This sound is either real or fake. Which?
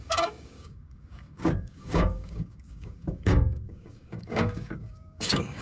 fake